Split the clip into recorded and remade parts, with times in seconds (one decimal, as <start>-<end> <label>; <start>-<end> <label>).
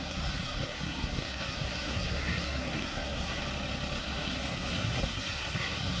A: 0.0-3.4 remade; 3.4-4.0 recorded; 4.0-6.0 remade